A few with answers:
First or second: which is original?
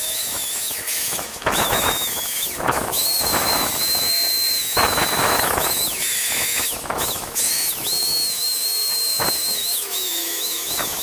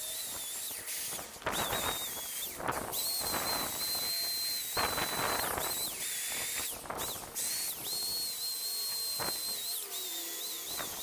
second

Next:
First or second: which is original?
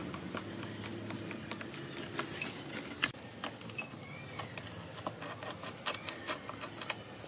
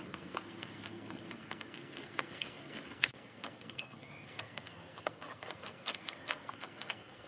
first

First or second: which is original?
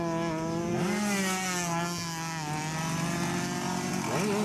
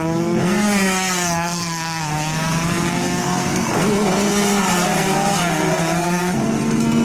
first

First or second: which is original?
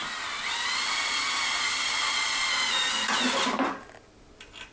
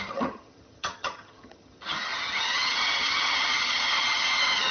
first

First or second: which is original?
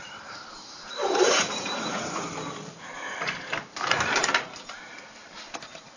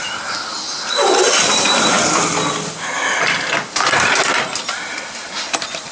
second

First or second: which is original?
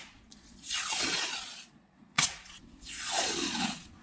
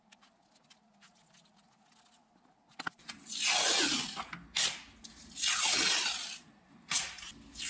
second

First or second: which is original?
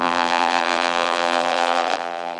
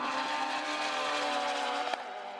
second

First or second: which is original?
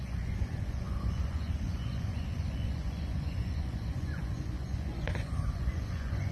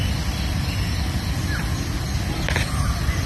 second